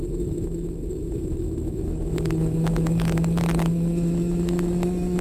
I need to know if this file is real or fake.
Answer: fake